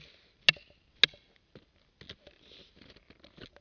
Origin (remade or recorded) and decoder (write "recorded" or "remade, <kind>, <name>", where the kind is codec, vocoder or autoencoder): recorded